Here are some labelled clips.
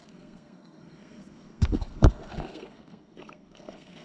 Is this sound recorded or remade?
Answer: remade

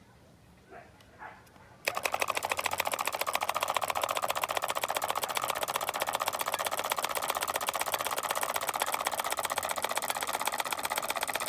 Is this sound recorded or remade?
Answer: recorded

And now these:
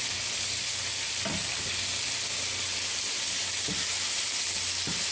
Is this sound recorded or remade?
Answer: recorded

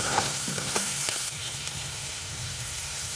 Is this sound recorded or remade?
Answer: remade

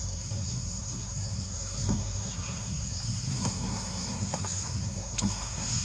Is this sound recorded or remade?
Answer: remade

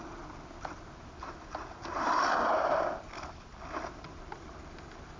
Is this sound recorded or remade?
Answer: recorded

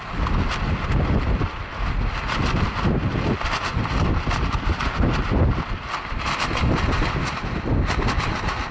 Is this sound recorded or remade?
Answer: recorded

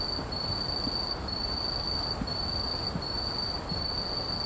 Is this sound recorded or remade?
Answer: recorded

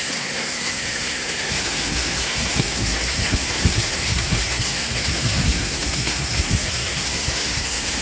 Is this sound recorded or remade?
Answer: remade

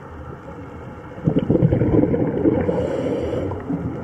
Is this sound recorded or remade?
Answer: recorded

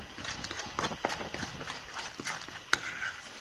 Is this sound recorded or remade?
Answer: recorded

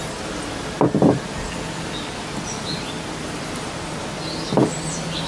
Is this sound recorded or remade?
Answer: recorded